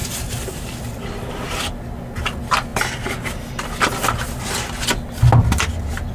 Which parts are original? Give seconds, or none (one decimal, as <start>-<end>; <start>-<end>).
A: 0.0-6.1